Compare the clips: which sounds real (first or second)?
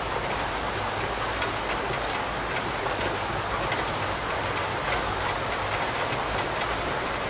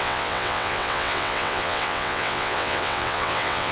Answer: first